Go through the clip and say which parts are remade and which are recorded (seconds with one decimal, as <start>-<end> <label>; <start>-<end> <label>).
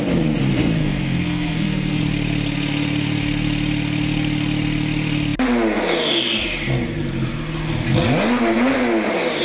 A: 0.0-0.5 recorded; 0.5-2.0 remade; 2.0-9.4 recorded